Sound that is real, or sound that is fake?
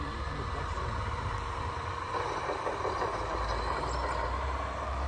fake